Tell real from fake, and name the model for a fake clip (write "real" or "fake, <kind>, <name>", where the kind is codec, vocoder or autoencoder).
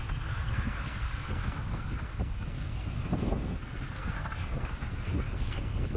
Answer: fake, codec, SNAC